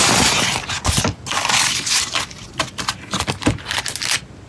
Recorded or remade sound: recorded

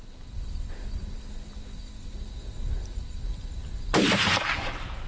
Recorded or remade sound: recorded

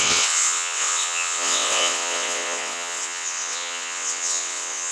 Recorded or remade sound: remade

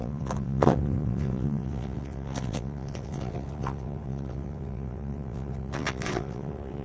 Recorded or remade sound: remade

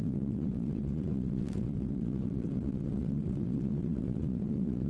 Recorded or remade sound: remade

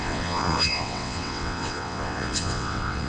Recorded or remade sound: remade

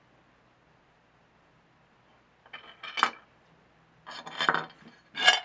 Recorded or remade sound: recorded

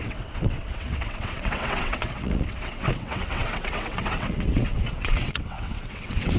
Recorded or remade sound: remade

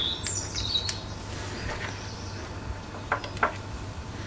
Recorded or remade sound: recorded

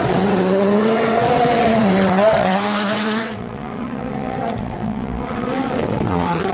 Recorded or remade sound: remade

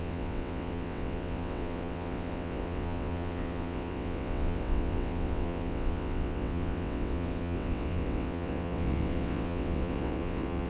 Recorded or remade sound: remade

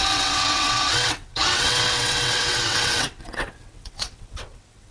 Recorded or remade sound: remade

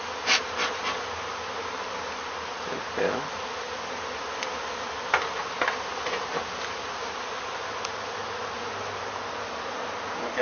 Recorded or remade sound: recorded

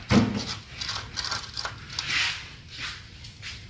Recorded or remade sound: recorded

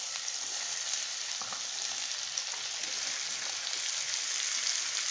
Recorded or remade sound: recorded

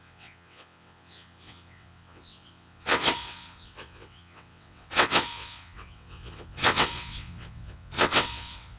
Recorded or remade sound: remade